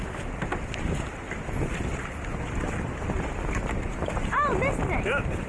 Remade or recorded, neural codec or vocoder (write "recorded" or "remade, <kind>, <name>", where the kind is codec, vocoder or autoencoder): recorded